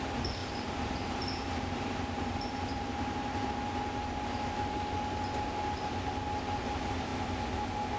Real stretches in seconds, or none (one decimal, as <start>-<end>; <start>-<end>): 0.0-0.4; 3.5-8.0